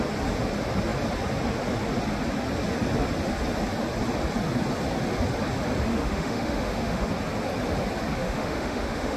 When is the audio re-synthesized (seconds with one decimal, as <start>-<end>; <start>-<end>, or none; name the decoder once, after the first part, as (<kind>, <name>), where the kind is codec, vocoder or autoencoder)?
5.9-7.1 (autoencoder, DAC-VAE); 8.2-9.2